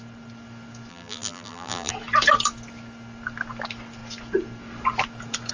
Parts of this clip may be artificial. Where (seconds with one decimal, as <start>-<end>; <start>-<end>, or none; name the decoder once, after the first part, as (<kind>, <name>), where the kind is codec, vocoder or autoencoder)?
0.9-1.9 (vocoder, BigVGAN v2)